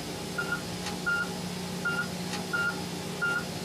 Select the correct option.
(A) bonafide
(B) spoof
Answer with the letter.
A